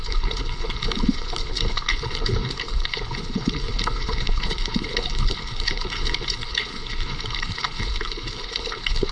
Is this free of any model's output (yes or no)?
no